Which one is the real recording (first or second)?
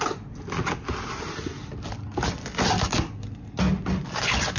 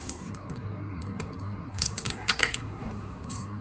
first